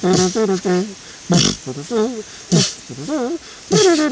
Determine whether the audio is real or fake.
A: real